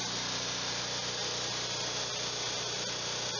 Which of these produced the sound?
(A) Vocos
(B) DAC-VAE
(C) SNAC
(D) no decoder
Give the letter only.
D